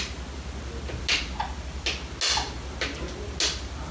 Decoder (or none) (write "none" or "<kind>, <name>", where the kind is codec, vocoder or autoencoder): none